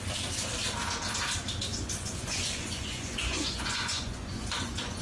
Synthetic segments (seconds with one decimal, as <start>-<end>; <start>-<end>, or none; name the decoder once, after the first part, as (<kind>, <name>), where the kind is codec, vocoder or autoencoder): 1.7-5.0 (vocoder, Vocos)